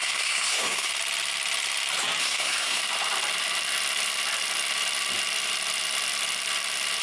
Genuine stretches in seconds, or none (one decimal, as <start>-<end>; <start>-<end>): 0.9-2.2; 2.8-7.0